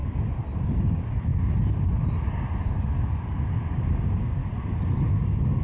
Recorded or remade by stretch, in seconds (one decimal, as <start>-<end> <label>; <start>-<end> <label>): 0.0-0.8 recorded; 0.8-1.3 remade; 1.3-3.5 recorded; 3.5-4.4 remade; 4.4-5.1 recorded; 5.1-5.6 remade